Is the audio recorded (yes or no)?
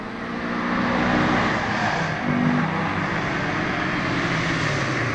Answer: yes